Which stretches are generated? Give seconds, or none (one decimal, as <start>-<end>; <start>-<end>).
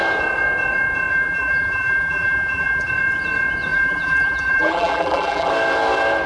1.1-2.9; 3.7-5.5